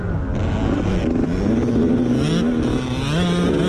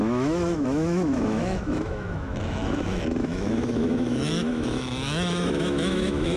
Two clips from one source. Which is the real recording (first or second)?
first